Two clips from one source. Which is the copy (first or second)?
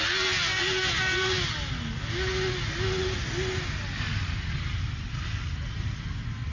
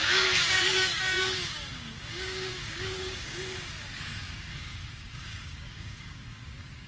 second